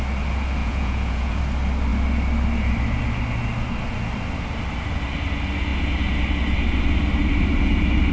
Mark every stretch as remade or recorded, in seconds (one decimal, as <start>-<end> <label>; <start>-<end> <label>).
0.0-0.6 recorded; 0.6-1.4 remade; 1.4-8.1 recorded